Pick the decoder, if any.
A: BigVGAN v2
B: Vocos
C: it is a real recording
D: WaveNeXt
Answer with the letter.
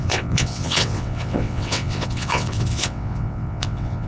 D